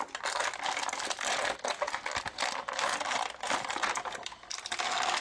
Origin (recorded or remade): recorded